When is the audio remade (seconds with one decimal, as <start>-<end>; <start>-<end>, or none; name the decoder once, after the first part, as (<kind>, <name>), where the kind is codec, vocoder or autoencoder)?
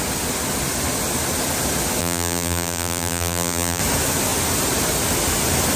2.0-3.8 (vocoder, BigVGAN v2)